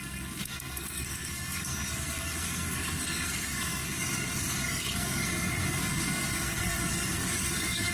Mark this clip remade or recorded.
remade